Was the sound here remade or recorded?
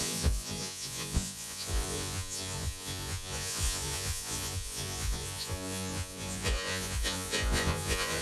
remade